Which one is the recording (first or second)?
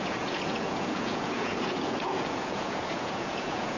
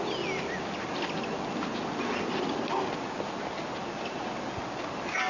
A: second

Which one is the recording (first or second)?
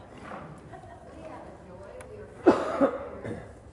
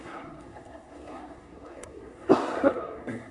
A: first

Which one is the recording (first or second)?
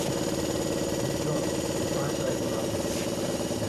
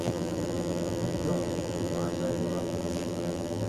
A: first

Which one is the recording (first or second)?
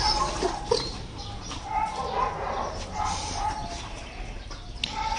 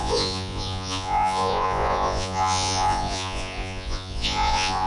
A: first